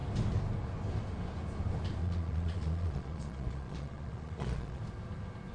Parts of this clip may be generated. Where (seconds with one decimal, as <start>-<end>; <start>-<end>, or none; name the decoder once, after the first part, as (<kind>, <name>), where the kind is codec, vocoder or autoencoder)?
2.0-4.8 (vocoder, Vocos)